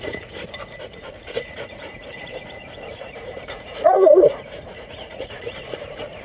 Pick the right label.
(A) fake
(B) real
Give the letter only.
A